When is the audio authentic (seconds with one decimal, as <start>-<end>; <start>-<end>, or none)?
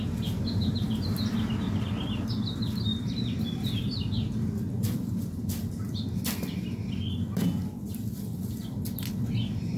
0.0-9.8